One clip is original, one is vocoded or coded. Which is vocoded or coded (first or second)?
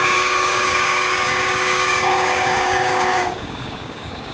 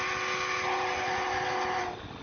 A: first